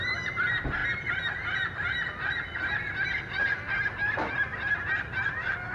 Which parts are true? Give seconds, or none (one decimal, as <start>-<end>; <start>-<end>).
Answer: 0.8-3.9